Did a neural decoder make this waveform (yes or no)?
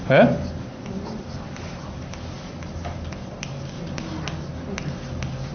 no